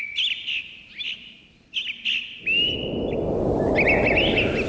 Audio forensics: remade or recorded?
recorded